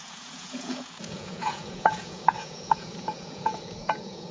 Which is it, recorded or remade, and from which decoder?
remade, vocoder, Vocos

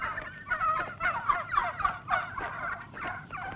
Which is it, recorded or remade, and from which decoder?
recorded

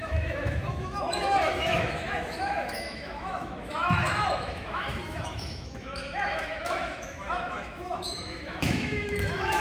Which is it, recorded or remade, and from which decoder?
remade, autoencoder, DAC-VAE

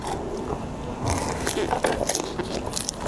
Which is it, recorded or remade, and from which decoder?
recorded